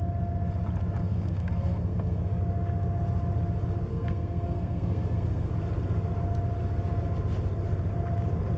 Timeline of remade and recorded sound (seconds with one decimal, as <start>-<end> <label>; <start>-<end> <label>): 0.0-1.0 recorded; 1.0-2.4 remade; 2.4-3.9 recorded; 3.9-5.5 remade; 5.5-8.6 recorded